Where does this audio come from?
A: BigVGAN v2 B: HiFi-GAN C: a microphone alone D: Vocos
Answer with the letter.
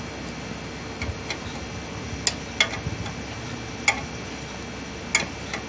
C